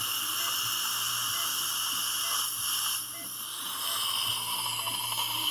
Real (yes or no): yes